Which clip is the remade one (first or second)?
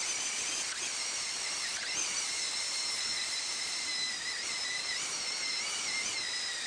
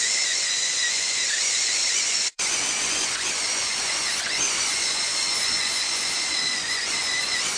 second